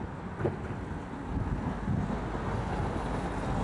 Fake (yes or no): no